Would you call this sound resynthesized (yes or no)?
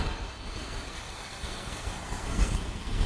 yes